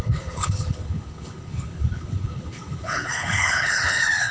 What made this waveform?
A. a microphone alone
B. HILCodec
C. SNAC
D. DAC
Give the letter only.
B